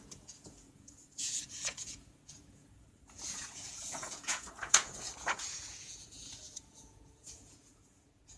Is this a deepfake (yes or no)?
yes